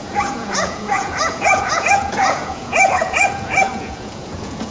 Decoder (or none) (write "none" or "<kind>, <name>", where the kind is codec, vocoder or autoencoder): vocoder, Vocos